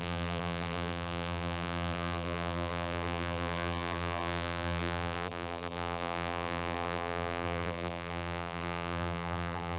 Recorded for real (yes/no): no